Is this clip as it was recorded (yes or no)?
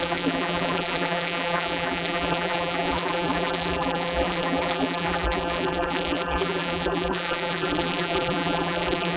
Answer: no